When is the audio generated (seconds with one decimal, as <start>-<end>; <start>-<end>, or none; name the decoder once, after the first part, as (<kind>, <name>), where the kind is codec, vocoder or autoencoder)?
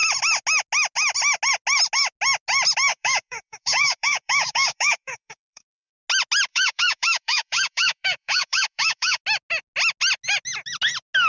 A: 2.9-5.9 (codec, DAC); 6.5-9.2